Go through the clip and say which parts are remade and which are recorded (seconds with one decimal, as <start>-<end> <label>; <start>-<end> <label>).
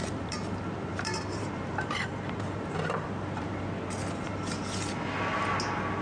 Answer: 0.0-3.6 remade; 3.6-6.0 recorded